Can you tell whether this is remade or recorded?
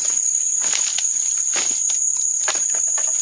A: recorded